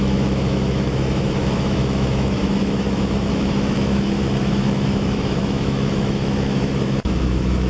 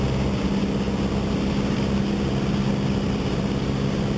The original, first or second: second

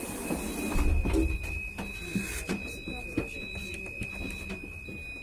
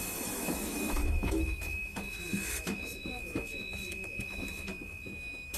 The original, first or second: first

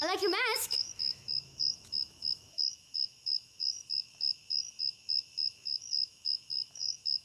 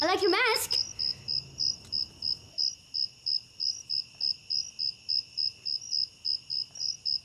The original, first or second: second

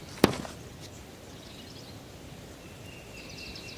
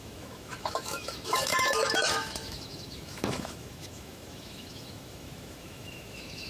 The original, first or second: first